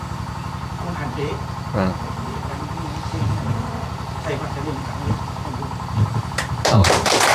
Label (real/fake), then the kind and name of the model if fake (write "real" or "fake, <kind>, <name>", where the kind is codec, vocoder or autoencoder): real